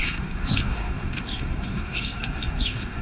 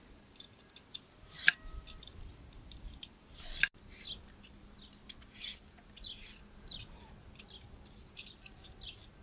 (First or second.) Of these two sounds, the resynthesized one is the first